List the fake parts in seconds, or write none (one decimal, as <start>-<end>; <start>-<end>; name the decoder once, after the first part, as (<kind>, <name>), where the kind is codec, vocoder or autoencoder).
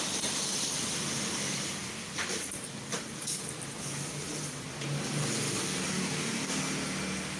5.9-6.5 (codec, DAC)